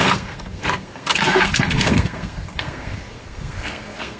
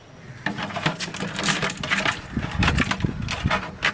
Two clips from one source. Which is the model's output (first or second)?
first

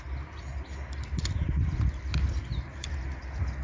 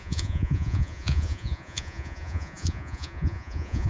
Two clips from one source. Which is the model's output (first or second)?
second